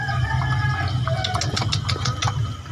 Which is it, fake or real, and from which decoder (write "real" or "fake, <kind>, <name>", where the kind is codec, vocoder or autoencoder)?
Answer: real